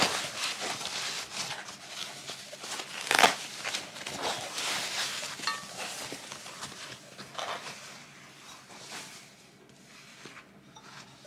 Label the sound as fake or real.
real